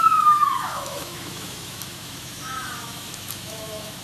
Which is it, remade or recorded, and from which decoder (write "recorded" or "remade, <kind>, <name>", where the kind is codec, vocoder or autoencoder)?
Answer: remade, autoencoder, DAC-VAE